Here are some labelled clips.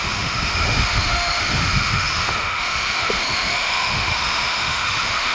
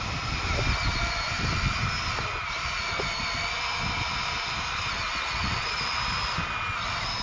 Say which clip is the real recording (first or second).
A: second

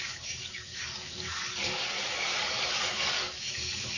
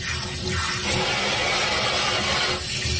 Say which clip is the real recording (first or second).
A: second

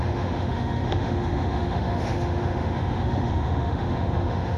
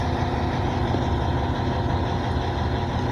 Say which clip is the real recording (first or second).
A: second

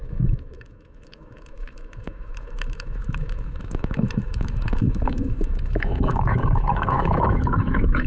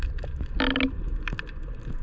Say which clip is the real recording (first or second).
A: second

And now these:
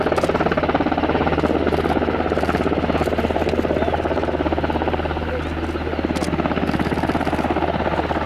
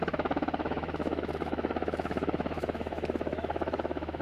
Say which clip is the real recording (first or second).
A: first